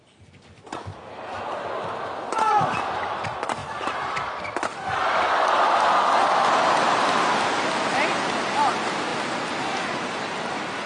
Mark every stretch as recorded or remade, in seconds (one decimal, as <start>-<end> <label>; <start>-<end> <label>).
0.0-10.9 recorded